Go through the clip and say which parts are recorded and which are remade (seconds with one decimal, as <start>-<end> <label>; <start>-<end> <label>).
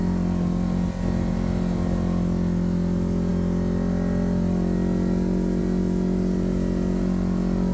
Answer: 0.0-7.7 recorded